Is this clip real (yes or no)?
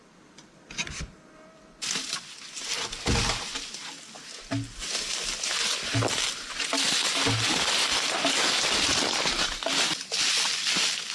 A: yes